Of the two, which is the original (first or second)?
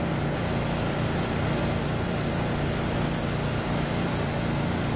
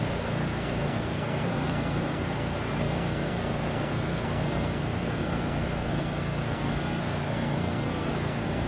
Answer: first